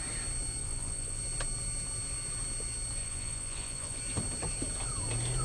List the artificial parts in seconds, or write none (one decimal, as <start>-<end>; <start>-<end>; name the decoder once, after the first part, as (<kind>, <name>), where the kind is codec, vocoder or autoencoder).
0.6-1.2 (vocoder, Vocos); 3.0-4.0